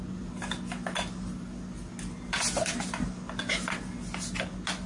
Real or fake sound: real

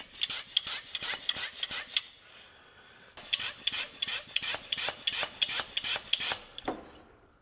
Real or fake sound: real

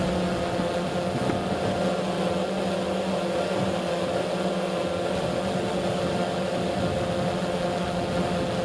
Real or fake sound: real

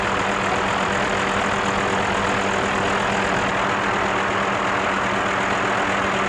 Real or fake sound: real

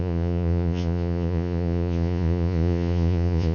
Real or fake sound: fake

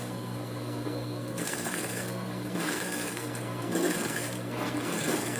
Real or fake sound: fake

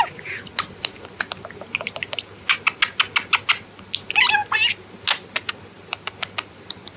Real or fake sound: real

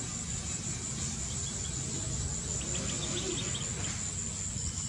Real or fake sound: real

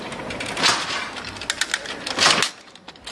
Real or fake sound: real